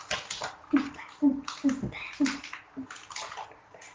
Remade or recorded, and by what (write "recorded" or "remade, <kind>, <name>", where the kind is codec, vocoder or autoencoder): recorded